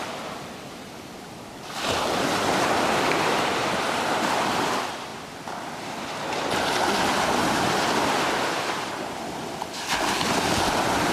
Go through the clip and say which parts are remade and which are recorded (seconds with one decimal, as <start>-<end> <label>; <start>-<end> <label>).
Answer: 0.0-11.1 recorded